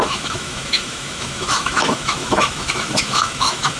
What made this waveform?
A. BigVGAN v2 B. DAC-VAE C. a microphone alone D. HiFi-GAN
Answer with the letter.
B